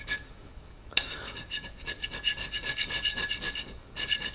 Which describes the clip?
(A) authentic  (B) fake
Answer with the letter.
B